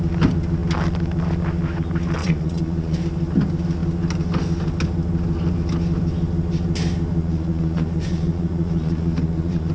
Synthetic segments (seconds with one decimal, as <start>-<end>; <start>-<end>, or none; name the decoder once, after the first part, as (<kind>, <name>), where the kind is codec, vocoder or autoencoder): 2.2-3.0 (vocoder, Vocos); 7.2-9.7